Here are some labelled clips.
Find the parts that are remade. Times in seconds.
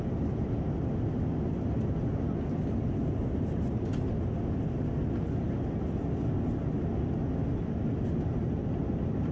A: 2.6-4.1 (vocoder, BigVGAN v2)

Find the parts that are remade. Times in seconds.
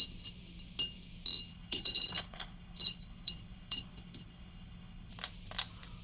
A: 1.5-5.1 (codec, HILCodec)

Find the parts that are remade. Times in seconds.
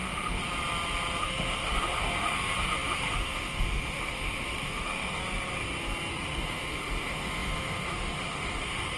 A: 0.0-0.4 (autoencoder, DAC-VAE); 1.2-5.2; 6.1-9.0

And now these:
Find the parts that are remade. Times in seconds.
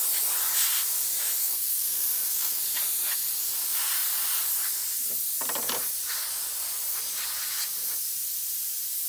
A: 1.4-2.6 (codec, SNAC)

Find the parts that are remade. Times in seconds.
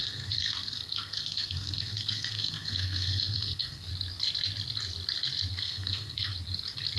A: 0.0-3.9 (codec, SNAC); 5.5-6.3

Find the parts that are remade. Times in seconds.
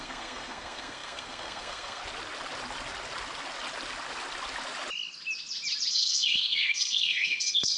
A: 0.0-2.0 (codec, SNAC); 5.9-7.8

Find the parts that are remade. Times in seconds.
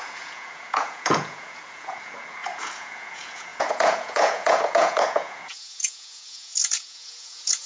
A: 0.0-7.7 (vocoder, Vocos)